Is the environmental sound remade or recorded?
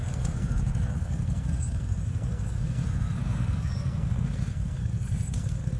remade